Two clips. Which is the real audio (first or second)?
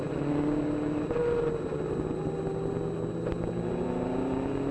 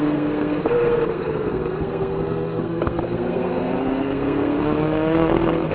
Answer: first